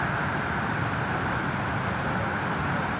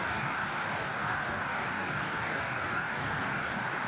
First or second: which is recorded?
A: first